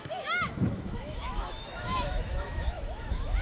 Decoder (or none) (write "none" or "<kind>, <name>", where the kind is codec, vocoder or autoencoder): autoencoder, DAC-VAE